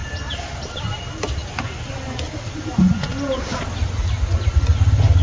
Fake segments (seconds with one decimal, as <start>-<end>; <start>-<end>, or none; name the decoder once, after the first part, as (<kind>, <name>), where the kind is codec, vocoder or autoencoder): none